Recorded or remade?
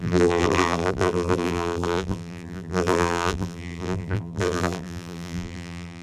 remade